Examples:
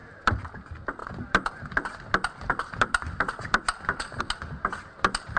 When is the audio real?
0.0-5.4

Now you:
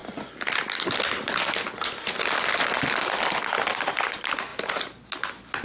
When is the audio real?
0.0-5.6

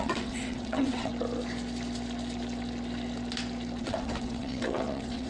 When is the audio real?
1.1-3.8

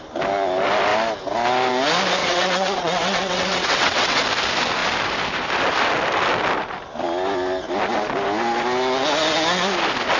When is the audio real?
0.0-2.2; 4.2-10.2

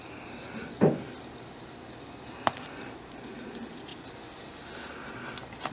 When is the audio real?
0.0-5.7

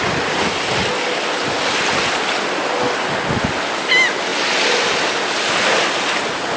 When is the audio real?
0.0-6.6

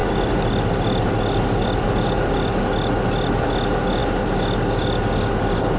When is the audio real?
0.0-5.8